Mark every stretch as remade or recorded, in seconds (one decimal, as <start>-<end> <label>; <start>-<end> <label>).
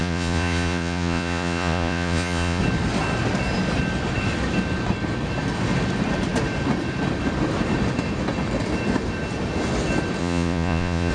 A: 0.0-2.6 remade; 2.6-10.2 recorded; 10.2-11.1 remade